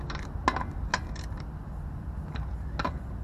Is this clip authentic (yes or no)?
yes